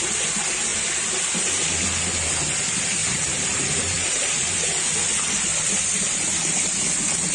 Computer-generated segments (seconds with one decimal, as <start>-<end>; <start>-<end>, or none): 3.0-4.5; 5.5-6.4